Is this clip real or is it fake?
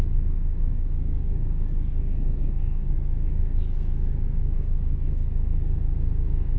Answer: fake